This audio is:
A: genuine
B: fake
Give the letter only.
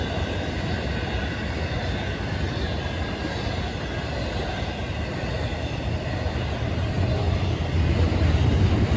A